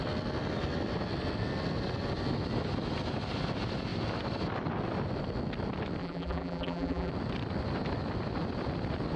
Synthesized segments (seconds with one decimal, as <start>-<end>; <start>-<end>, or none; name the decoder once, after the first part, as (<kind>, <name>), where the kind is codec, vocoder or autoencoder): 6.0-7.1 (vocoder, BigVGAN v2)